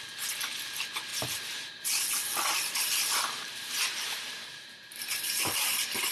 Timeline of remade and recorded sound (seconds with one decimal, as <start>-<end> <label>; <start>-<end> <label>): 0.0-1.1 recorded; 1.1-1.7 remade; 1.7-2.2 recorded; 2.2-6.1 remade